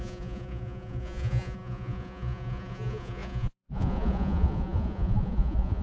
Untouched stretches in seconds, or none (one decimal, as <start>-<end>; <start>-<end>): none

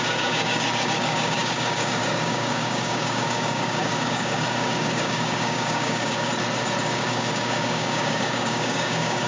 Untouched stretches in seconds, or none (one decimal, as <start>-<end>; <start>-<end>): 6.3-6.8

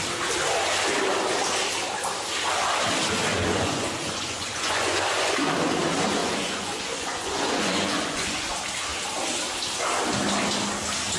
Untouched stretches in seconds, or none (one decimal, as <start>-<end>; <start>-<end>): 0.0-3.3; 5.5-6.2; 8.5-11.2

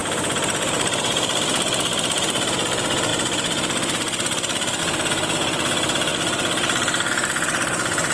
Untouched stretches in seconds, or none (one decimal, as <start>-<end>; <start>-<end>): 2.5-8.1

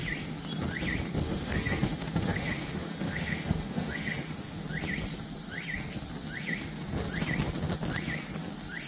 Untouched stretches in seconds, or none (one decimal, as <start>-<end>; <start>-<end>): 0.0-1.2; 4.6-8.9